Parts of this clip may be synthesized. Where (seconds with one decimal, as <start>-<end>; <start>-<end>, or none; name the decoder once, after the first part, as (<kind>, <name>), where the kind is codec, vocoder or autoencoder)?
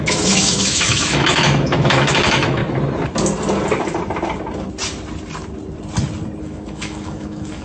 0.0-2.6 (autoencoder, DAC-VAE); 6.4-7.6